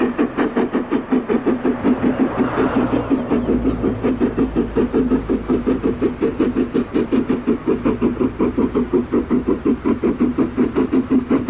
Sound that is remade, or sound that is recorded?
recorded